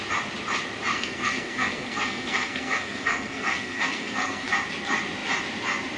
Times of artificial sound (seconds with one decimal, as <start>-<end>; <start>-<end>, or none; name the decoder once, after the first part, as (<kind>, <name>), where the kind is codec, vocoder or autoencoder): 0.9-4.5 (codec, SNAC)